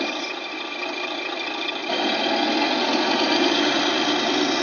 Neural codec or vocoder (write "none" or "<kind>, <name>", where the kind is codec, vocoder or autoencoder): none